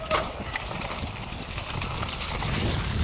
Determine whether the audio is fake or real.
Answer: real